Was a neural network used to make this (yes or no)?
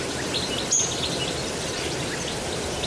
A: no